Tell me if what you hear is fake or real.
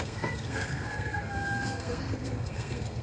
fake